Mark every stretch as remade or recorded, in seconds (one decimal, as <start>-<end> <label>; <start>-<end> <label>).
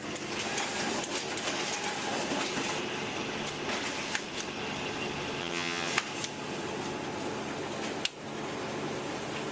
0.0-5.4 recorded; 5.4-5.9 remade; 5.9-9.5 recorded